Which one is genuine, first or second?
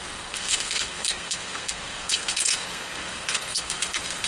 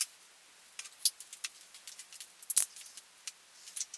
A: second